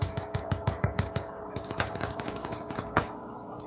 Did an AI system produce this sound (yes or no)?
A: yes